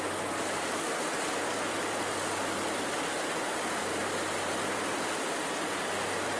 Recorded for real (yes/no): yes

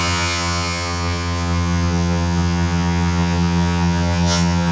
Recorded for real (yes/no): no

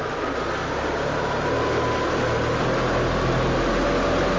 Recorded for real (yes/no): yes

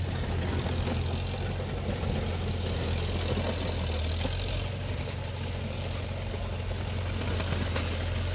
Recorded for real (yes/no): yes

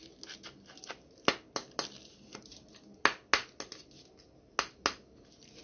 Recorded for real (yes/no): yes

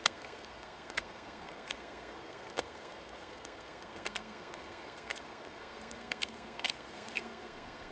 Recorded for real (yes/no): no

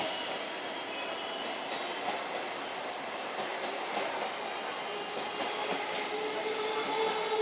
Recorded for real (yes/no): yes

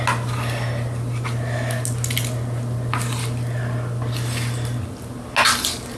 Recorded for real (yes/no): yes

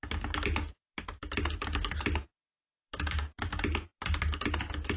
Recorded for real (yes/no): yes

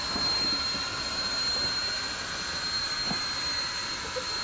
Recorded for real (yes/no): yes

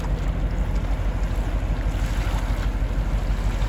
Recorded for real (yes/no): yes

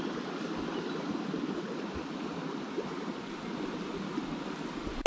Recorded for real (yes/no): yes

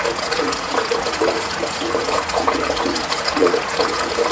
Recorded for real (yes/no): no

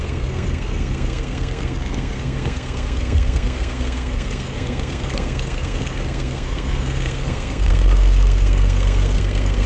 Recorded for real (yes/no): no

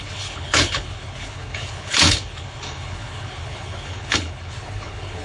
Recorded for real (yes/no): no